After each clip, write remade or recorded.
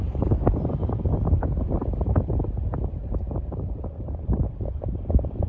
remade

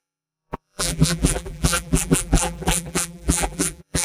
remade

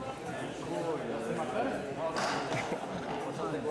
recorded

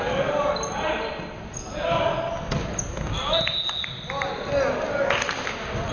recorded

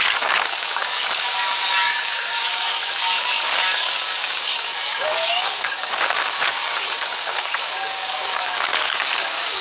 remade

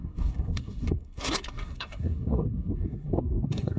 remade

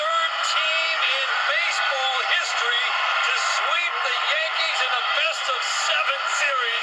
remade